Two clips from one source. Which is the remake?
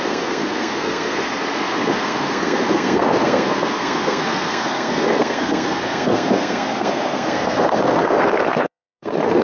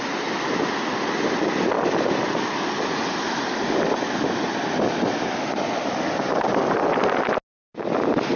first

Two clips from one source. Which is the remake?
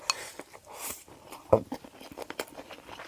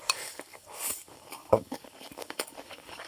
second